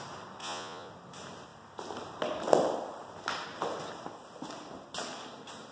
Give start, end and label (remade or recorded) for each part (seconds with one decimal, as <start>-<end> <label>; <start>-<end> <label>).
0.0-0.4 recorded; 0.4-0.9 remade; 0.9-5.7 recorded